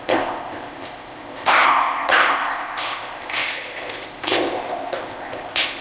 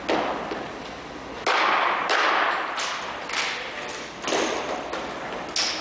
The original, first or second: second